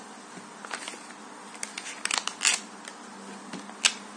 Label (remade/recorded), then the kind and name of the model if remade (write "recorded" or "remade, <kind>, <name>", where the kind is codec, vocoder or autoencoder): recorded